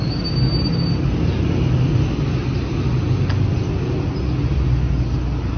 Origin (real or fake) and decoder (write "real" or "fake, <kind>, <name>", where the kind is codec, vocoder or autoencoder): real